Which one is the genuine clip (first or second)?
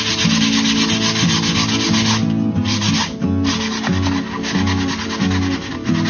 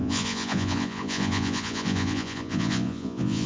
first